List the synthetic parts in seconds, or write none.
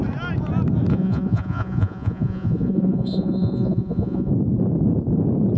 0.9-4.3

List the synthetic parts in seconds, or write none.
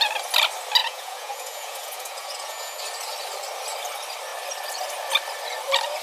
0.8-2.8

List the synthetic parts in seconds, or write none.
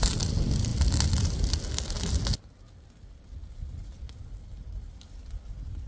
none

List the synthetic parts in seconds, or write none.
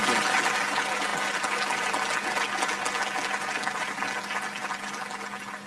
none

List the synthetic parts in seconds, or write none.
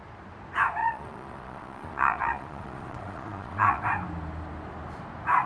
0.8-3.8